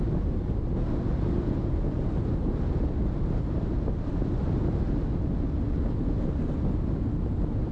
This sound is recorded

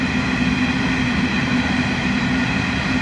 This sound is recorded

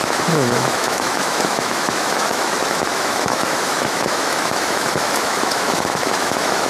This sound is remade